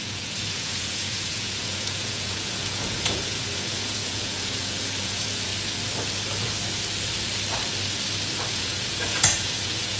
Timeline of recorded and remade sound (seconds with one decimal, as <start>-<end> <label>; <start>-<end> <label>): 0.0-5.5 remade; 5.5-8.5 recorded; 8.5-10.0 remade